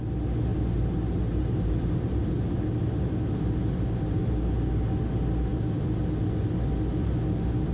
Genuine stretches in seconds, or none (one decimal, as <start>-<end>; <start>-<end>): 0.0-0.5; 3.2-3.6; 4.2-7.7